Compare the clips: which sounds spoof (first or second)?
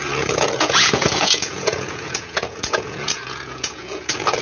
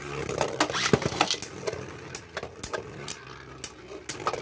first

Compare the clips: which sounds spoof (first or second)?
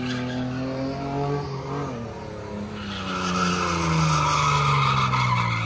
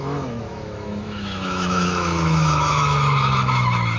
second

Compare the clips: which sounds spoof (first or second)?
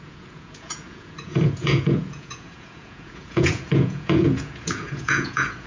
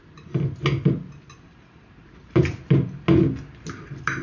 first